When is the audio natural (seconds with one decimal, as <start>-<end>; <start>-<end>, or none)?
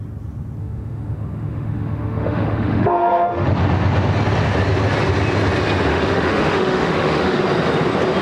0.0-0.6; 3.5-5.9; 7.4-8.2